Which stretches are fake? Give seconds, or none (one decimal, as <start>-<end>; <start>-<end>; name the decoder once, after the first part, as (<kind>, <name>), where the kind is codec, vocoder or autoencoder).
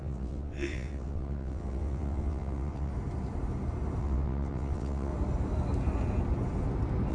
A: 0.0-2.9 (vocoder, WaveNeXt); 4.0-5.1